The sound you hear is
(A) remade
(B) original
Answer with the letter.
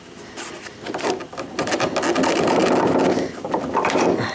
B